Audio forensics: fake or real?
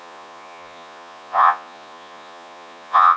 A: fake